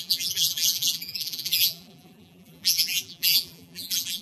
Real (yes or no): no